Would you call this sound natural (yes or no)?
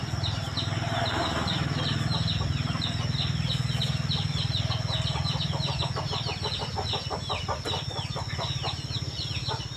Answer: yes